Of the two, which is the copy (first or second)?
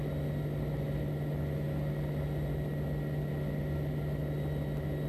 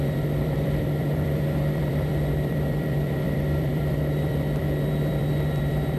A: second